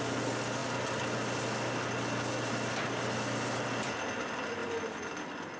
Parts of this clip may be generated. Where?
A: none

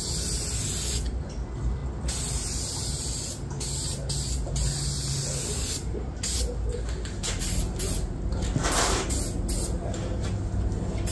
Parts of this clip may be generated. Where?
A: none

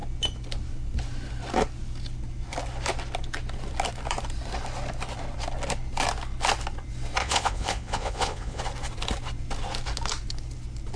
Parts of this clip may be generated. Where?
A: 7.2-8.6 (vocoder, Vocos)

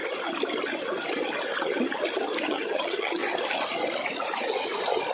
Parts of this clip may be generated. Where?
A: 2.5-3.2 (vocoder, HiFi-GAN)

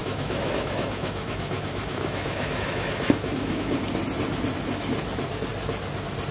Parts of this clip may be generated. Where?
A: 0.0-3.8 (autoencoder, DAC-VAE)

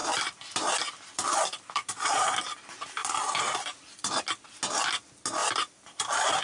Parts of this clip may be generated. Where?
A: 0.0-1.9 (vocoder, BigVGAN v2); 3.0-4.2; 5.4-6.0